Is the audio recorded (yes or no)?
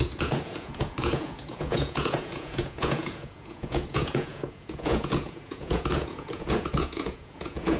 no